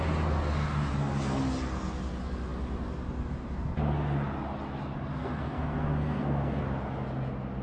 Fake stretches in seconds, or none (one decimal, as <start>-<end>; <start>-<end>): 5.2-6.6